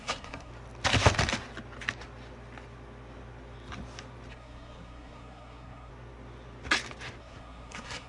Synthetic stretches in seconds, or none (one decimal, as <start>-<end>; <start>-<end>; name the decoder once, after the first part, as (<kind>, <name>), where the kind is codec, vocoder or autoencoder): 0.0-0.5 (codec, SNAC); 4.3-5.9; 7.2-8.1